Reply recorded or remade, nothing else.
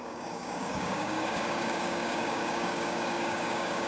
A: remade